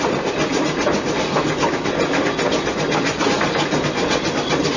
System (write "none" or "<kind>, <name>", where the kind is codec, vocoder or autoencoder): none